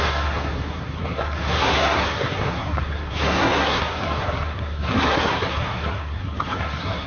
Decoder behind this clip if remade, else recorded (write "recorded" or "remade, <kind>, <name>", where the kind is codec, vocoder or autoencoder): remade, codec, SNAC